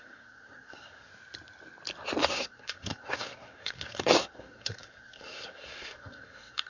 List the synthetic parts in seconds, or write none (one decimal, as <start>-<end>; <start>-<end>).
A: 0.0-1.1; 2.3-6.7